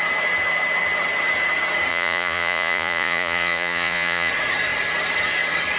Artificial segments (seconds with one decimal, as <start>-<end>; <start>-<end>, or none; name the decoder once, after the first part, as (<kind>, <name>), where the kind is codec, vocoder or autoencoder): 1.9-4.3 (vocoder, Vocos)